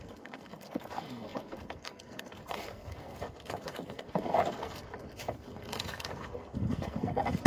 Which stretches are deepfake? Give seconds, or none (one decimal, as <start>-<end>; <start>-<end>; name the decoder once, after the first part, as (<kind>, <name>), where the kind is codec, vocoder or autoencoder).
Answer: 0.0-7.5 (codec, SNAC)